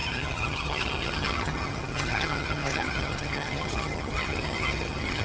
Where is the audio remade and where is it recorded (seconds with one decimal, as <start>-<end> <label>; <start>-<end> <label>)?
0.0-5.2 remade